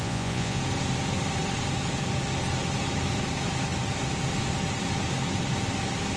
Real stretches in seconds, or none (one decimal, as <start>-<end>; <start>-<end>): 0.6-6.2